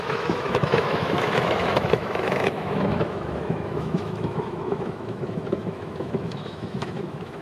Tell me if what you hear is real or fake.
fake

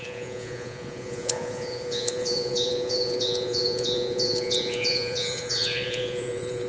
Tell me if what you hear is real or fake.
fake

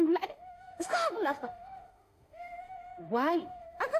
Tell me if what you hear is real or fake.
fake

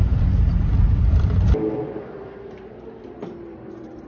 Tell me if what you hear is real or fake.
real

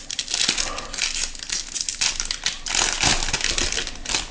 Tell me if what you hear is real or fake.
real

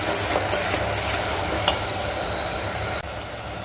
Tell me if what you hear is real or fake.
real